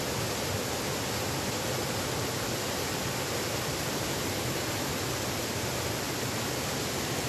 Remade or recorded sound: recorded